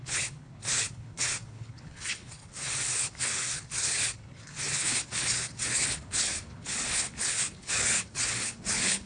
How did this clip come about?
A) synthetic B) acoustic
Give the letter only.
A